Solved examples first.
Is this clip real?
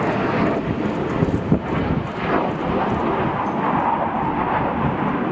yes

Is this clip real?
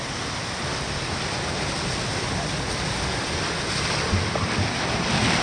yes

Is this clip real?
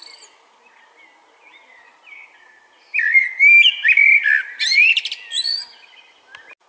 yes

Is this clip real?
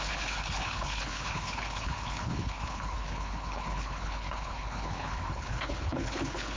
no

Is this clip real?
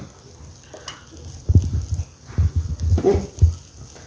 yes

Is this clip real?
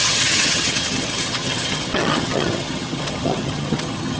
no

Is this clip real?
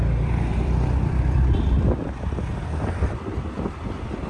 no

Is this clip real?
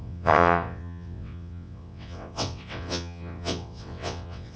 no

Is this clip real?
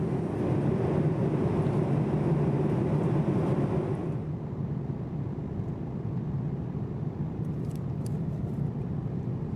yes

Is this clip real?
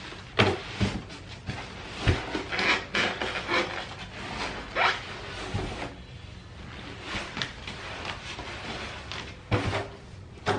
yes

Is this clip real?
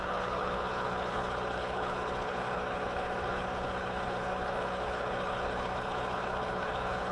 no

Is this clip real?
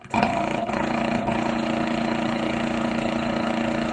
no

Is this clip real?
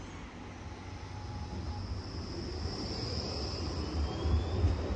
yes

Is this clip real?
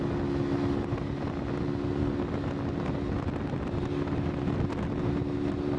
yes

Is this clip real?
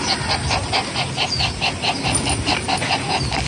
yes